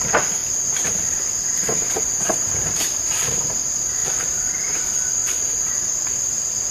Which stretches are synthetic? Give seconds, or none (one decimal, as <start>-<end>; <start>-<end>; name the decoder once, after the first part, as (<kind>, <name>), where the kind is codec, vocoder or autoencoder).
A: 0.0-6.7 (vocoder, BigVGAN v2)